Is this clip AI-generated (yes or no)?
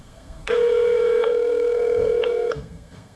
yes